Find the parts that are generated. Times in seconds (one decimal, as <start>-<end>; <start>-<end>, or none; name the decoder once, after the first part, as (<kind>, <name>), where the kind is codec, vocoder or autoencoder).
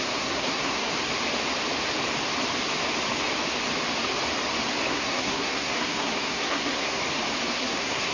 0.0-0.9 (codec, SNAC); 4.9-7.0; 7.5-8.1